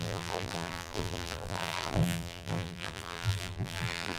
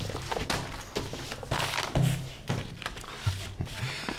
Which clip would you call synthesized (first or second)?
first